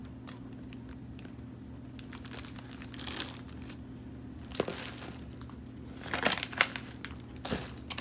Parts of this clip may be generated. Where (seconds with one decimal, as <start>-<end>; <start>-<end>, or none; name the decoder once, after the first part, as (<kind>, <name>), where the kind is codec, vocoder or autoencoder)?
none